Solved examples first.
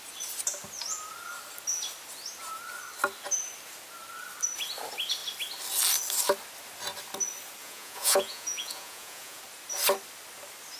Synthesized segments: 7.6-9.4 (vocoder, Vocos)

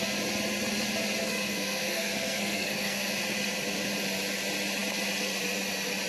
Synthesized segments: 1.2-3.1 (codec, SNAC)

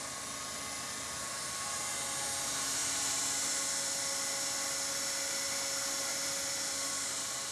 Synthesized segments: none

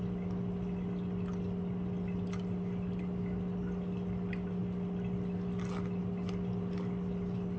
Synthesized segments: none

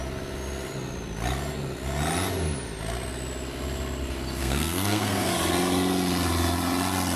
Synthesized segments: 4.4-5.3 (codec, SNAC)